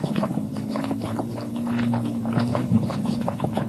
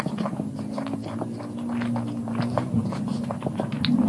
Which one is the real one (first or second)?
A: second